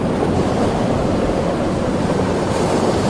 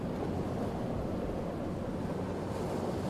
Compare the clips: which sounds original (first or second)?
second